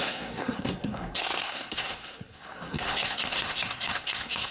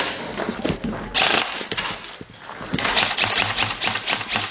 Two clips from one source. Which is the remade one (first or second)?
first